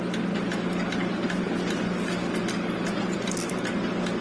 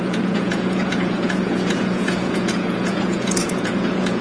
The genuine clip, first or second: first